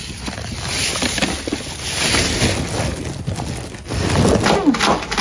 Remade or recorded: recorded